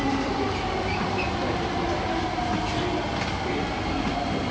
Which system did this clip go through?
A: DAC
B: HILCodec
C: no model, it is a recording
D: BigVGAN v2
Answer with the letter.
C